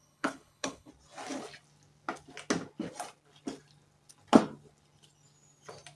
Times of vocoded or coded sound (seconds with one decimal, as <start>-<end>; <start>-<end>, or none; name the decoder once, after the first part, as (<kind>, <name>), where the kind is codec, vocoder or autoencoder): 0.0-0.9 (codec, HILCodec)